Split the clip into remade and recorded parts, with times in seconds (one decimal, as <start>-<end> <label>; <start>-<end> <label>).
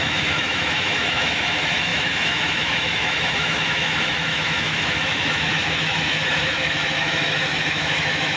0.0-8.4 remade